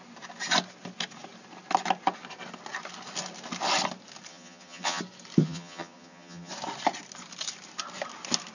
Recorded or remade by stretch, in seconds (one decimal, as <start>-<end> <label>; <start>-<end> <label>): 0.0-4.3 recorded; 4.3-5.0 remade; 5.0-5.4 recorded; 5.4-6.5 remade; 6.5-8.5 recorded